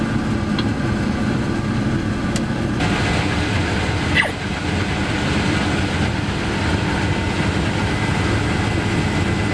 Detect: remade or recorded recorded